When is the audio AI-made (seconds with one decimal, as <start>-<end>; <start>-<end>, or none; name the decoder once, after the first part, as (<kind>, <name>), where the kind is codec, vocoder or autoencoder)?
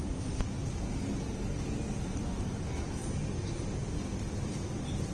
none